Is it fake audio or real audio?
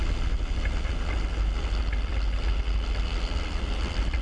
real